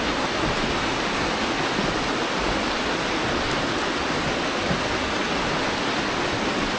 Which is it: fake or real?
real